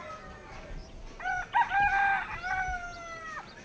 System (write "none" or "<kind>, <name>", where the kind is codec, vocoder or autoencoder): none